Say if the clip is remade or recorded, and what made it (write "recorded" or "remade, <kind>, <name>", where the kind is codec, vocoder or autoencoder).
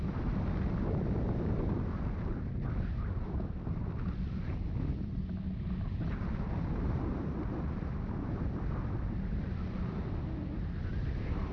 recorded